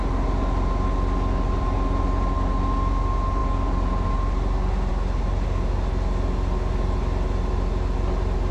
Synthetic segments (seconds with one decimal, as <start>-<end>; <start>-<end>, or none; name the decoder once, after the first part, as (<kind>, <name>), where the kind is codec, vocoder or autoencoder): none